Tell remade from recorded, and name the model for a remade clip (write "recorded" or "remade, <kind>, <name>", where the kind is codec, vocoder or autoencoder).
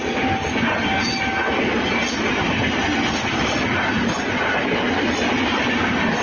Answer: recorded